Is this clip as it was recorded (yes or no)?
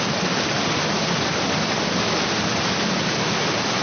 yes